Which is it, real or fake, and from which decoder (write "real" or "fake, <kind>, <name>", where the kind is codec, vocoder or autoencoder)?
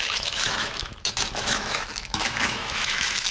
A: fake, autoencoder, DAC-VAE